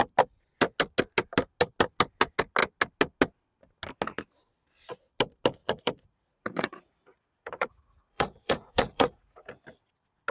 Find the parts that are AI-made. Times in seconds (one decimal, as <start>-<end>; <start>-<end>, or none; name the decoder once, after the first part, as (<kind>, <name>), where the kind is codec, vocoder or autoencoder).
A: 5.6-9.5 (vocoder, Vocos)